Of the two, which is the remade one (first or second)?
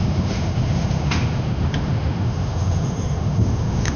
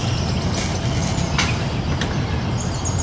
first